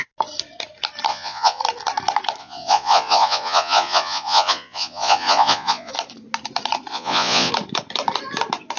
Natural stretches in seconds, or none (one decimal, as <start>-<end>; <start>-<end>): 0.0-1.1; 1.6-2.4; 5.9-6.9; 7.5-8.8